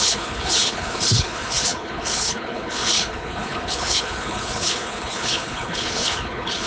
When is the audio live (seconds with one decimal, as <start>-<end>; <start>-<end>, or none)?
none